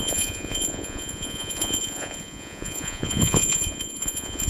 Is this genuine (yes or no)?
no